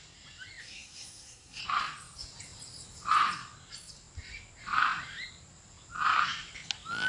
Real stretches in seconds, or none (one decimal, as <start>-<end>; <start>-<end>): 0.0-0.6; 1.6-7.1